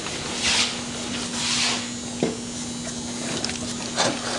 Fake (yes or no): no